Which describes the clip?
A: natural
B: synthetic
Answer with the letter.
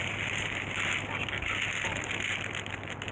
A